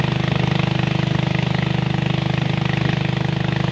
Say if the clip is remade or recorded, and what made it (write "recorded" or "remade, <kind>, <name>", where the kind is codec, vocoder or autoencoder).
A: recorded